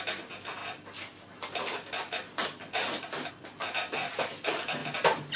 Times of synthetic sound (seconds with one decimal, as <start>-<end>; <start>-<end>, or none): none